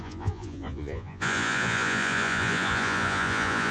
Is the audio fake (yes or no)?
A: yes